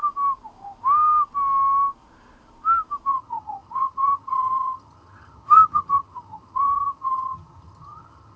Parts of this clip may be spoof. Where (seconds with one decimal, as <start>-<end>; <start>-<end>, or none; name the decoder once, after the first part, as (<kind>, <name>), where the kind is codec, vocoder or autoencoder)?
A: 3.1-8.4 (vocoder, HiFi-GAN)